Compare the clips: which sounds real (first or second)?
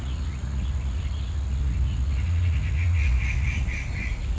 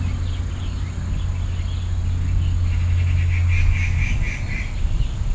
second